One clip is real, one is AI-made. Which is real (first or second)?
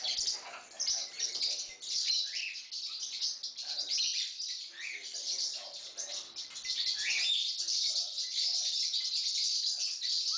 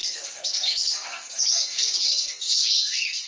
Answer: first